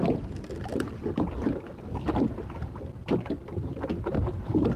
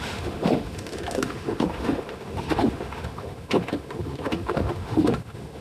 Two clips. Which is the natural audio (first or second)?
first